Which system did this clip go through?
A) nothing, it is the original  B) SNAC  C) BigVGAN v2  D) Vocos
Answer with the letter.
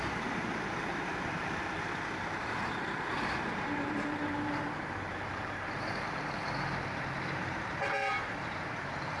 C